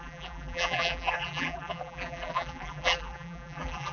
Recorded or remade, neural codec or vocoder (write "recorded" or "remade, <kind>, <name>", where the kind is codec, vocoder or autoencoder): remade, vocoder, BigVGAN v2